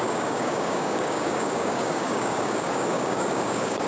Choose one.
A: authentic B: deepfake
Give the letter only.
B